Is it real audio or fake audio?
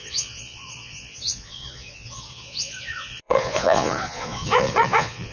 fake